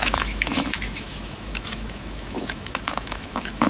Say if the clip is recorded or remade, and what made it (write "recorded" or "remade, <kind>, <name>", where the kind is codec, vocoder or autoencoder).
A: remade, autoencoder, DAC-VAE